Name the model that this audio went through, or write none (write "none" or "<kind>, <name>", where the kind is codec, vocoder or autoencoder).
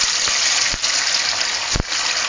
none